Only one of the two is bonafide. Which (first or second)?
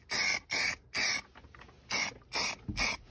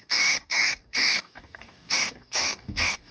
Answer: first